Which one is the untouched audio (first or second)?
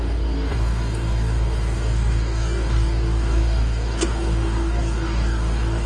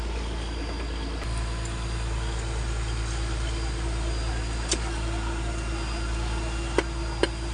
second